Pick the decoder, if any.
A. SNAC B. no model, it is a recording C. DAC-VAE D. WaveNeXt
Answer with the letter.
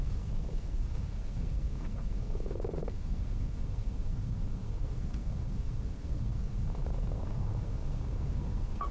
A